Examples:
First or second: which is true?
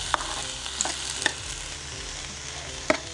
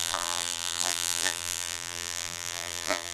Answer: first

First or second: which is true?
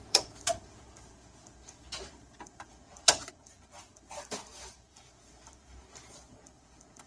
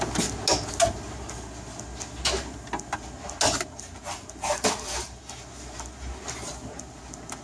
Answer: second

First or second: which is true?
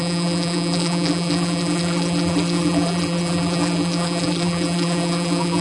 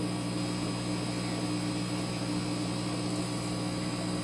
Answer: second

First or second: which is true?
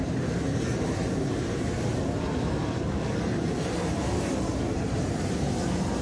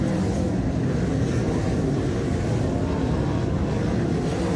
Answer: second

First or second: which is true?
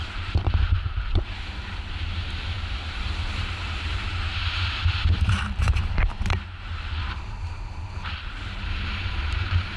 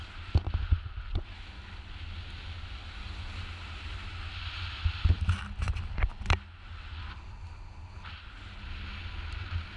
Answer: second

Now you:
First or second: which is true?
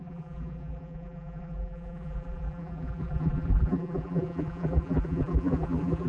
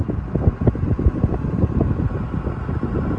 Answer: second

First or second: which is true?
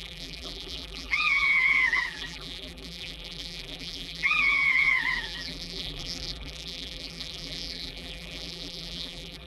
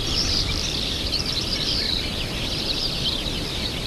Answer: second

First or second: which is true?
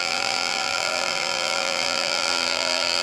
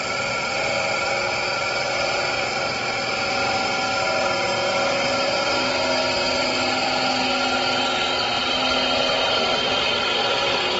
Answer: second